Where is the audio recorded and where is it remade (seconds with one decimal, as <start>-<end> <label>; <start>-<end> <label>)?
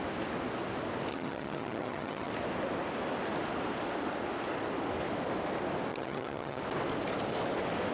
0.0-1.1 recorded; 1.1-2.3 remade; 2.3-5.9 recorded; 5.9-6.6 remade; 6.6-7.9 recorded